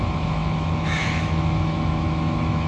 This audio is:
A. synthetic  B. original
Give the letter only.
A